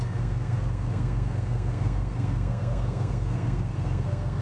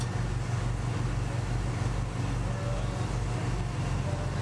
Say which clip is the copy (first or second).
first